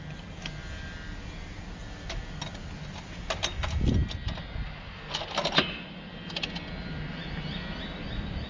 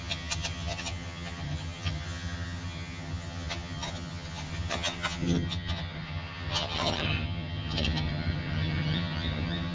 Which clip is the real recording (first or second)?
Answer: first